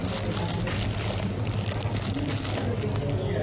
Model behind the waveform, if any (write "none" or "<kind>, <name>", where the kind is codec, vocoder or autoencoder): none